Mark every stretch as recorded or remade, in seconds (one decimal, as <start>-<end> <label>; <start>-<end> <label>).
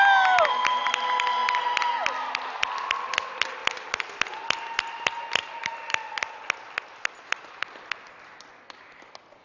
0.0-9.4 recorded